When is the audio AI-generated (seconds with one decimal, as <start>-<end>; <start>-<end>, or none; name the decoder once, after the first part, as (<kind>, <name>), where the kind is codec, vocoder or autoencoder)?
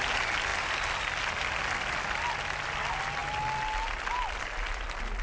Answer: none